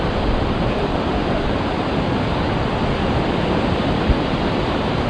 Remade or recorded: remade